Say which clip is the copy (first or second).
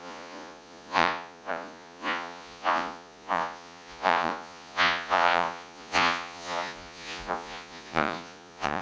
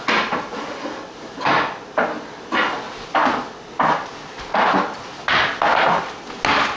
first